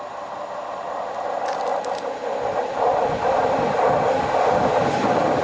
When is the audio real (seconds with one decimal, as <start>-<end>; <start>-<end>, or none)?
1.7-4.9